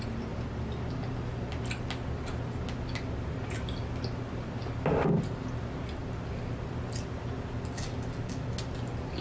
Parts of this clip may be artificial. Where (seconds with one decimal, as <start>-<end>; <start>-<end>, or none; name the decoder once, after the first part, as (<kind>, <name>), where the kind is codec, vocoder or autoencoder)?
none